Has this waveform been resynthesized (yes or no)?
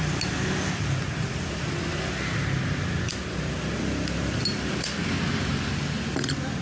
no